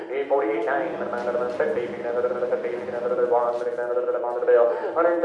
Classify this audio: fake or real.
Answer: real